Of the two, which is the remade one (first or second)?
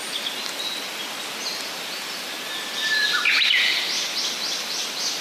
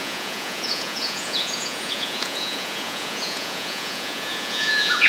second